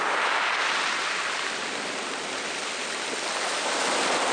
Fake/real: real